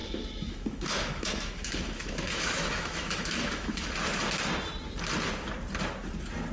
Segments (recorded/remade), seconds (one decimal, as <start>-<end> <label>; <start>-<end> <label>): 0.0-3.9 remade; 3.9-6.5 recorded